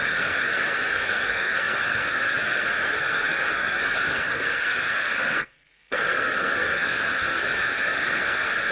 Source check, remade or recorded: remade